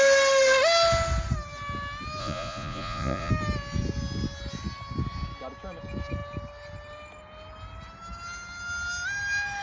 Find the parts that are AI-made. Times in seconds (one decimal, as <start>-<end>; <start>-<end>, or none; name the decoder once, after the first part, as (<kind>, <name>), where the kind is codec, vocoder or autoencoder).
2.2-3.3 (vocoder, Vocos)